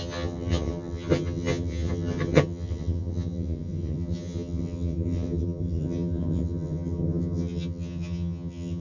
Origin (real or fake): fake